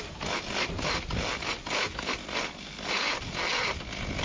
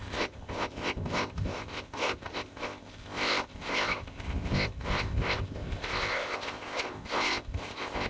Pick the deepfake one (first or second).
second